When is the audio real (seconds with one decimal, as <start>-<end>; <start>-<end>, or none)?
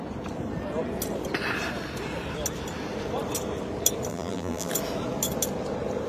0.0-4.1; 4.7-6.1